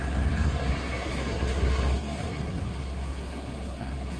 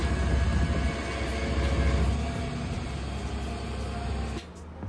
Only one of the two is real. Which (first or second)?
second